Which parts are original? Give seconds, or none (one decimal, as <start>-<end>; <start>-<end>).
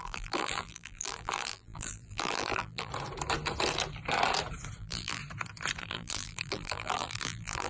2.9-4.8; 5.2-5.8